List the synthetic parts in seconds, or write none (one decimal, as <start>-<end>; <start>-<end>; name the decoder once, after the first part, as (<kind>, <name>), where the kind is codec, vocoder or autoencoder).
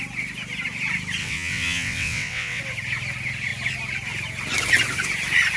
1.2-2.6 (vocoder, WaveNeXt)